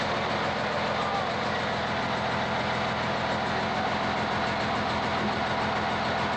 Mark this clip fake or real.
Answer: real